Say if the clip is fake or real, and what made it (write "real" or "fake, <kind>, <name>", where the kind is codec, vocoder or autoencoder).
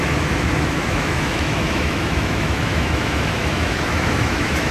fake, autoencoder, DAC-VAE